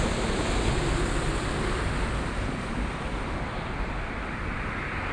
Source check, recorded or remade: recorded